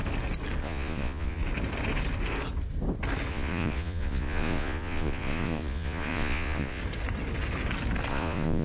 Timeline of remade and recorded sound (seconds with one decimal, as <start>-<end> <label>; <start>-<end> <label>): 0.0-0.6 recorded; 0.6-1.4 remade; 1.4-3.3 recorded; 3.3-6.8 remade; 6.8-8.1 recorded; 8.1-8.6 remade